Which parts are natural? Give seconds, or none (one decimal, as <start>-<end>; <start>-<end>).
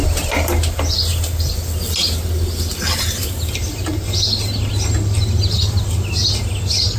0.0-7.0